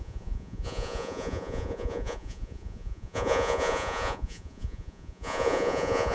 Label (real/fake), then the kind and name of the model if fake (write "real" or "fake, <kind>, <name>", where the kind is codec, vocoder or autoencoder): fake, vocoder, Vocos